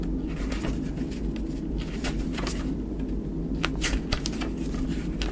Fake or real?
real